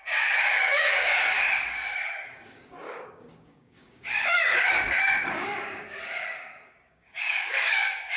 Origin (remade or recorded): remade